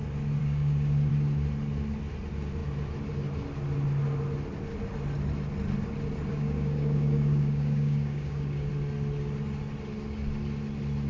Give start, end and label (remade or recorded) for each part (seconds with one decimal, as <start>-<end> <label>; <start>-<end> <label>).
0.0-0.4 recorded; 0.4-1.1 remade; 1.1-6.3 recorded; 6.3-8.7 remade; 8.7-11.1 recorded